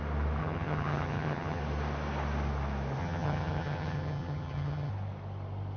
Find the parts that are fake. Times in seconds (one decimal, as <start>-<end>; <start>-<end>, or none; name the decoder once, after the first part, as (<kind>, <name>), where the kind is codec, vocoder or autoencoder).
0.4-1.6 (vocoder, HiFi-GAN); 3.0-4.9